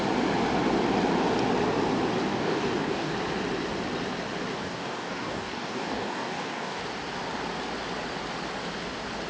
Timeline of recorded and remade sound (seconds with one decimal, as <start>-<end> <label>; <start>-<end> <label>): 0.0-2.3 recorded; 2.3-3.1 remade; 3.1-4.6 recorded; 4.6-6.8 remade; 6.8-9.3 recorded